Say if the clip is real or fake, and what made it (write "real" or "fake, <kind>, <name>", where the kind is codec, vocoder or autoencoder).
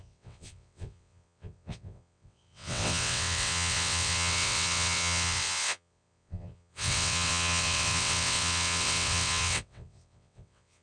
fake, vocoder, WaveNeXt